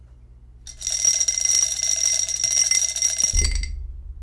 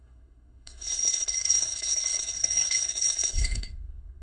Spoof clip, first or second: second